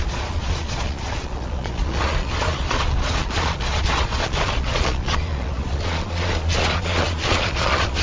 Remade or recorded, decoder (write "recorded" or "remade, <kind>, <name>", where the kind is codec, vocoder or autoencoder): remade, vocoder, Vocos